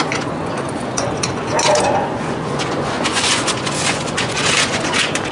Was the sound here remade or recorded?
remade